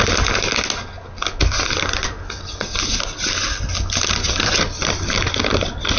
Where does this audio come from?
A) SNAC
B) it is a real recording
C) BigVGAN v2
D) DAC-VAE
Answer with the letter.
B